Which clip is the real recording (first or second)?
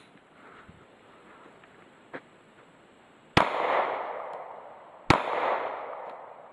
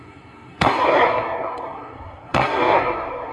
first